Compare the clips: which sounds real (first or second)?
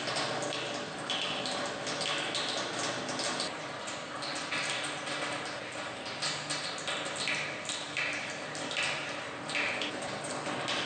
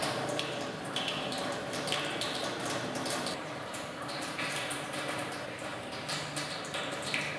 first